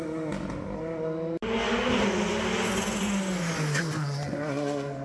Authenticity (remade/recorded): recorded